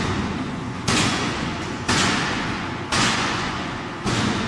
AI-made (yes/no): yes